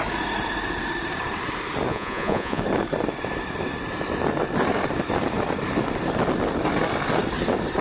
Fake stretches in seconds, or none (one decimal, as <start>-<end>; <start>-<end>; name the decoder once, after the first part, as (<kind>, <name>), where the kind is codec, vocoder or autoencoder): 1.9-2.6 (vocoder, Vocos)